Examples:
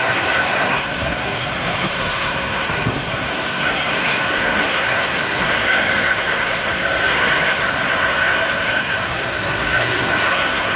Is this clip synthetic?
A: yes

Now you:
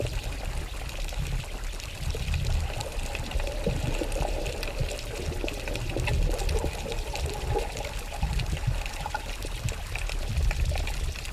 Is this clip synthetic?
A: no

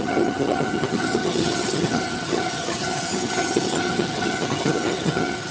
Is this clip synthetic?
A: yes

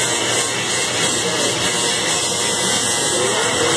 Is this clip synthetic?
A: no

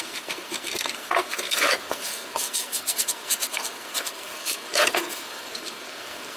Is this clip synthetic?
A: yes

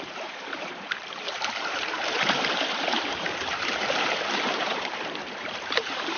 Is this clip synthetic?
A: yes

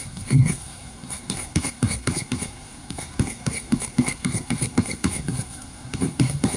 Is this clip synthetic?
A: yes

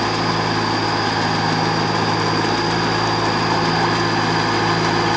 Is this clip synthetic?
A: no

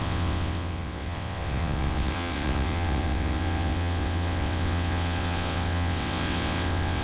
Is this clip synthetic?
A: yes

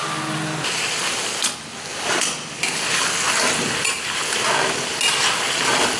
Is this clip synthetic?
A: no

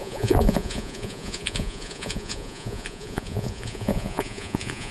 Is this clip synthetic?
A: yes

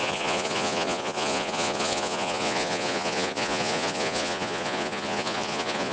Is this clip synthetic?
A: yes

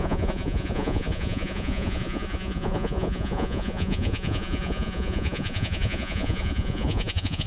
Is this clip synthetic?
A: yes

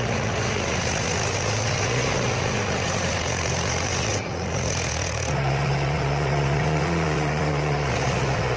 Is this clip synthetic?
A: yes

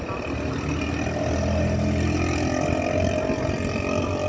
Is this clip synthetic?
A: no